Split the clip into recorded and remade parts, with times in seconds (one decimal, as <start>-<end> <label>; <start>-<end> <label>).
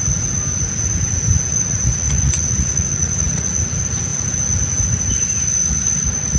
0.0-1.5 recorded; 1.5-3.6 remade; 3.6-6.4 recorded